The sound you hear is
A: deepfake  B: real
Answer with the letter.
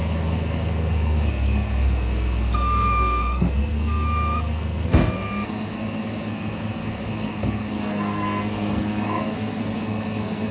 A